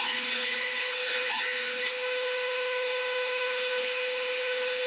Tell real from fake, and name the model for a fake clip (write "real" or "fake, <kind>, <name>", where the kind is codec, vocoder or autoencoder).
fake, codec, HILCodec